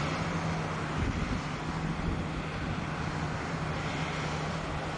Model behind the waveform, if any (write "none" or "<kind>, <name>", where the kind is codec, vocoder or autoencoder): none